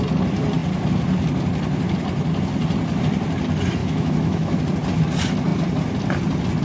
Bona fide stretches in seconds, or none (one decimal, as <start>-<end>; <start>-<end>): 0.0-3.8; 4.6-6.6